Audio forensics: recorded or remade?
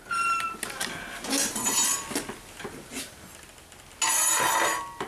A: recorded